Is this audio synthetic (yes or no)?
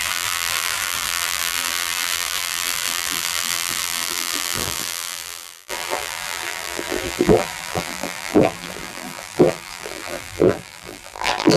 yes